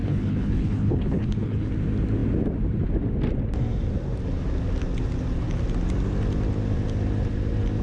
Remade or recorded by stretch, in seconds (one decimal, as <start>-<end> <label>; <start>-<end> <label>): 0.0-1.7 remade; 1.7-7.8 recorded